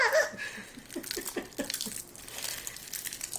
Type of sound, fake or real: real